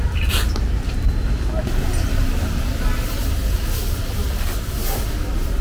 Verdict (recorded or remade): recorded